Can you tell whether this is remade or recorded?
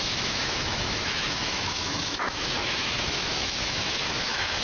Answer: remade